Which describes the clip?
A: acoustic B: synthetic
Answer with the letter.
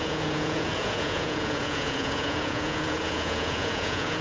B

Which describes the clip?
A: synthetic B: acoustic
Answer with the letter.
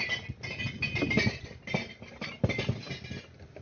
B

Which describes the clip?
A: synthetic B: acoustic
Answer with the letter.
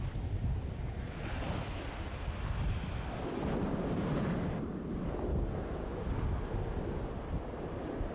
B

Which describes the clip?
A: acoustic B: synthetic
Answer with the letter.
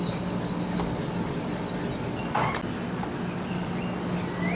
A